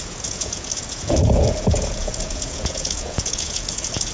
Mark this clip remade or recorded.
remade